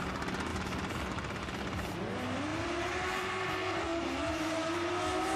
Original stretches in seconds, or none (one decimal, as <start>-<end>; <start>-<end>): 0.0-2.5; 3.5-3.9; 4.9-5.4